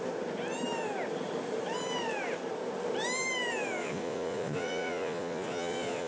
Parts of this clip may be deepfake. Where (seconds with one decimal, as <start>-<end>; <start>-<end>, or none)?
3.8-6.1